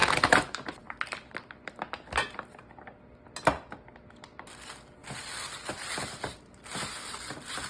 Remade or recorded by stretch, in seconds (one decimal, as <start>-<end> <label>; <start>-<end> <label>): 0.0-2.6 remade; 2.6-6.1 recorded; 6.1-7.2 remade; 7.2-7.7 recorded